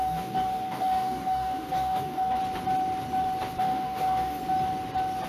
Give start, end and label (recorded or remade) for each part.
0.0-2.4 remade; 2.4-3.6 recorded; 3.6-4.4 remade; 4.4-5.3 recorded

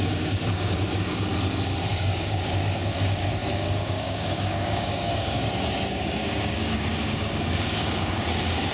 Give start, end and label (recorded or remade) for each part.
0.0-1.3 remade; 1.3-1.9 recorded; 1.9-8.7 remade

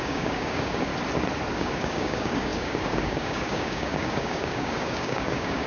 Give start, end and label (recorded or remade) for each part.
0.0-0.9 remade; 0.9-1.5 recorded; 1.5-5.7 remade

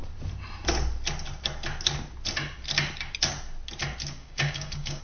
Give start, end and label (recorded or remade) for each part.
0.0-4.2 recorded; 4.2-5.0 remade

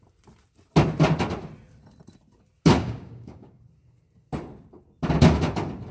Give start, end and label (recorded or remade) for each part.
0.0-2.8 recorded; 2.8-3.6 remade; 3.6-5.9 recorded